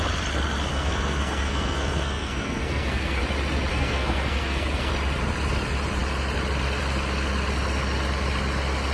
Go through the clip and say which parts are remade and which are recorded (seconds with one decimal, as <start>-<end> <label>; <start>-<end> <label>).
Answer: 0.0-0.7 recorded; 0.7-3.2 remade; 3.2-3.7 recorded; 3.7-4.9 remade; 4.9-8.9 recorded